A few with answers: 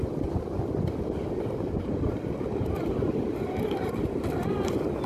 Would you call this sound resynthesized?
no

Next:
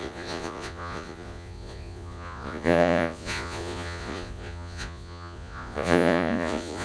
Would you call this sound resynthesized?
yes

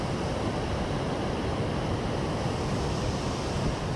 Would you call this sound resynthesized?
no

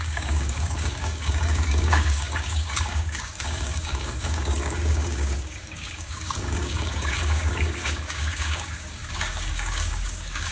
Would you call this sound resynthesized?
yes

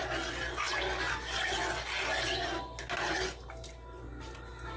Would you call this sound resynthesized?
no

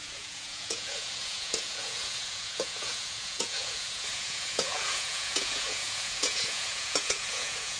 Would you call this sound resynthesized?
yes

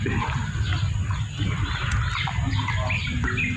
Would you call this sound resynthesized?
no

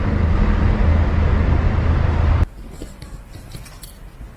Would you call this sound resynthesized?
no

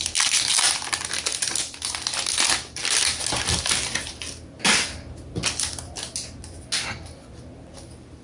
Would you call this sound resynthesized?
no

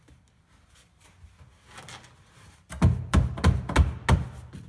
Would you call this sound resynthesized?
no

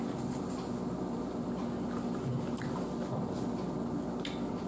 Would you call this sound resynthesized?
no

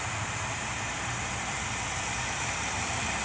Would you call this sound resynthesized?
yes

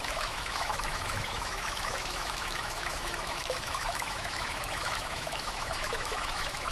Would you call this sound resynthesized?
yes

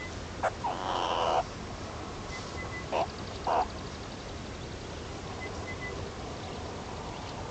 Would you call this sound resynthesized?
no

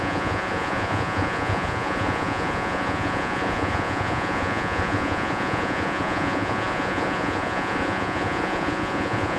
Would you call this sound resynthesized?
yes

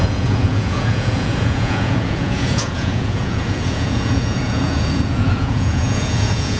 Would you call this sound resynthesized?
yes